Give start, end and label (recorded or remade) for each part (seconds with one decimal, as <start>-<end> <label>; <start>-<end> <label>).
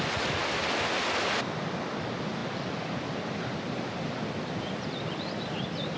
0.0-2.4 recorded; 2.4-6.0 remade